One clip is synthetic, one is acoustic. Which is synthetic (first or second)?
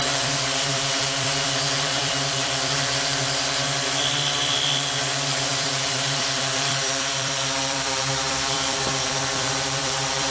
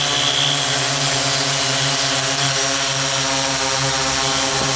first